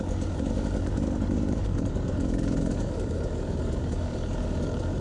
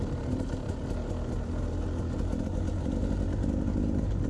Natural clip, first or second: second